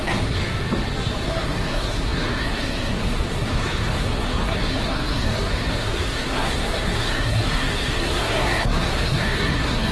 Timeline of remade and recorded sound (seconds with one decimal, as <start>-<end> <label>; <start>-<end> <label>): 0.0-0.4 remade; 0.4-1.3 recorded; 1.3-9.9 remade